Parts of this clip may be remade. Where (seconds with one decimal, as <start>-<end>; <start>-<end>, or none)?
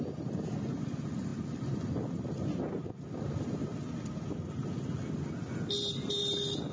none